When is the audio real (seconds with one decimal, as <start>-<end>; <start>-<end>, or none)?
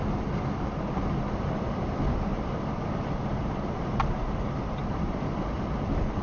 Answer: 0.0-2.3; 5.6-6.2